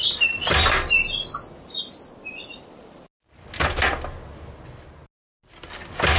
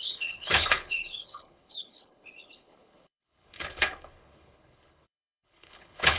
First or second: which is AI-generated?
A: second